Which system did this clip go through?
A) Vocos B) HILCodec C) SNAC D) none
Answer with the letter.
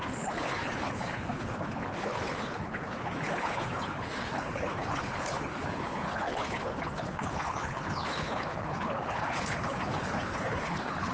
B